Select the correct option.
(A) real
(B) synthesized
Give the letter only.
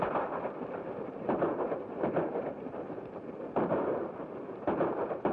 A